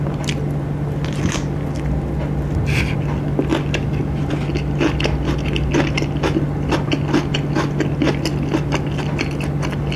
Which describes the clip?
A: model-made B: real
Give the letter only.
B